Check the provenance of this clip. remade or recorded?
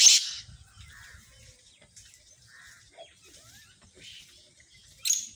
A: recorded